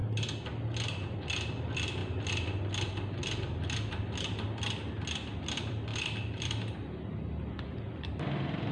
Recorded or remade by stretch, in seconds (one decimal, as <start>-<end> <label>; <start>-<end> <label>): 0.0-1.2 recorded; 1.2-2.0 remade; 2.0-5.4 recorded; 5.4-8.7 remade